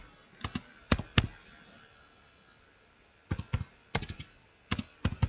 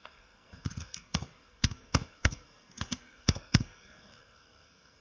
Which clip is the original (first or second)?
first